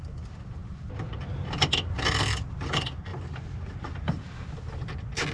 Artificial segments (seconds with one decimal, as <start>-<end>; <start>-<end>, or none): 3.1-4.5